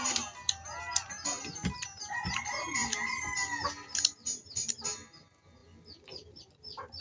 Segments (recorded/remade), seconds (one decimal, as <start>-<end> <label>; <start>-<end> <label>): 0.0-7.0 recorded